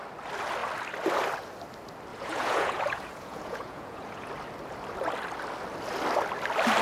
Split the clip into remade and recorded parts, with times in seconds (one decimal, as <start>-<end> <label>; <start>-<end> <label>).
0.0-2.1 recorded; 2.1-4.3 remade; 4.3-6.8 recorded